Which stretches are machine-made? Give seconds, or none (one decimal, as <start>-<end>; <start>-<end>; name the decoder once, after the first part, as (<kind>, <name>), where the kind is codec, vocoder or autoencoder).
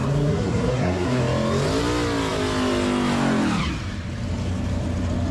0.0-1.2 (codec, SNAC)